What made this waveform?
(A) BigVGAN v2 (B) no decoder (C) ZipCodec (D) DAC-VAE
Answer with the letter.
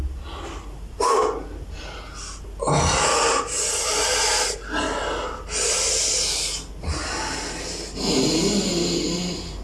B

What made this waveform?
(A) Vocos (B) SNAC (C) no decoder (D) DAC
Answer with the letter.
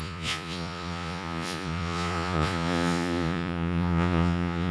A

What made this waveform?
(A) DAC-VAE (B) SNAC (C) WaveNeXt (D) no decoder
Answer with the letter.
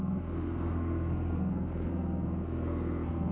B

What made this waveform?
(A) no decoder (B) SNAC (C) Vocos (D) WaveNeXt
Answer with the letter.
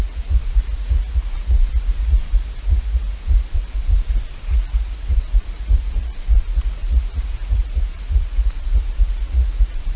C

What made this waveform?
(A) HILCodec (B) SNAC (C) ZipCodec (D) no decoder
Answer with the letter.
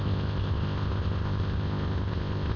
C